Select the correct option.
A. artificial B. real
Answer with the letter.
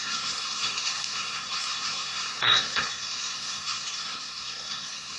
A